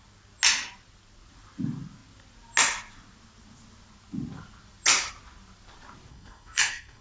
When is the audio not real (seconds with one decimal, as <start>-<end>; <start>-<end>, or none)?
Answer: 6.1-7.0

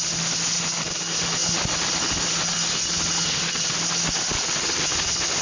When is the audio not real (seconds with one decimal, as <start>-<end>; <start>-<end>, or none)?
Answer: none

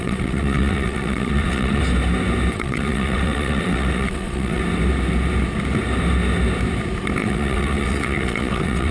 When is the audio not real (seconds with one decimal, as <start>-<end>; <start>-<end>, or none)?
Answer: 0.0-1.8; 2.5-4.6; 7.2-8.9

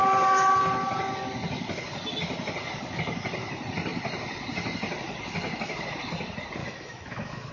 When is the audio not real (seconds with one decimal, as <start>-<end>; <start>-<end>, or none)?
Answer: 6.6-7.5

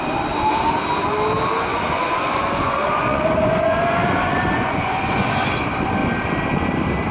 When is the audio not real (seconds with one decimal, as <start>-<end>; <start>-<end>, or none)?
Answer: 1.7-5.5

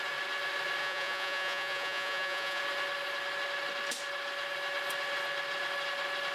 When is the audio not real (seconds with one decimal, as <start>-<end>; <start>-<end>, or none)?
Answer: 0.8-2.6

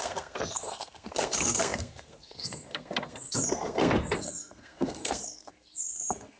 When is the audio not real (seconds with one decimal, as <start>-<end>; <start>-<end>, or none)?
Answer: 0.0-6.4